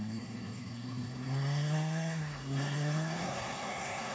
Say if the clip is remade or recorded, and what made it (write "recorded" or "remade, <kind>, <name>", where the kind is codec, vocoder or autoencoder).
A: remade, codec, SNAC